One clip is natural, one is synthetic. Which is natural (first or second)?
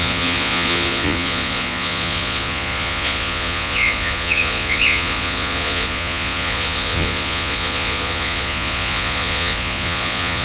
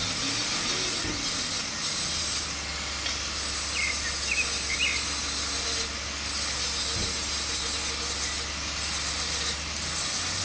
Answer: second